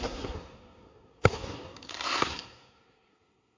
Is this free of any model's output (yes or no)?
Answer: no